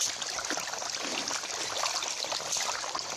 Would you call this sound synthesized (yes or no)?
no